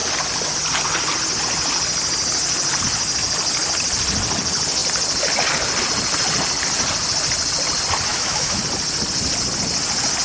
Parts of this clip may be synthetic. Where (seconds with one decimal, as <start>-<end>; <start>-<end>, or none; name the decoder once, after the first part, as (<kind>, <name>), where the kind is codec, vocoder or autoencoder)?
8.1-8.6 (autoencoder, DAC-VAE)